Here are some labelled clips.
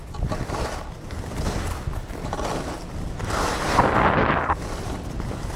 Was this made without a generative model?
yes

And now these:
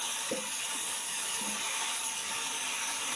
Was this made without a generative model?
no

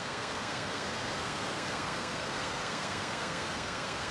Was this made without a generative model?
no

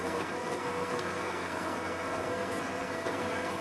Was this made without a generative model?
no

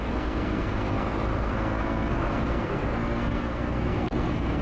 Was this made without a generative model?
no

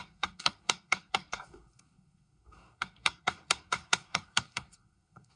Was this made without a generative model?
no